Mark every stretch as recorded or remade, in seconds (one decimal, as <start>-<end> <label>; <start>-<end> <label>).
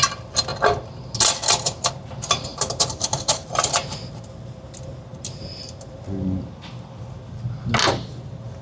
0.0-2.5 recorded; 2.5-3.5 remade; 3.5-5.1 recorded; 5.1-5.7 remade; 5.7-8.6 recorded